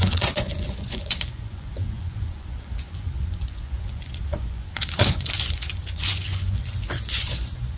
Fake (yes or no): yes